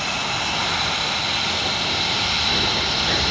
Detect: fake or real real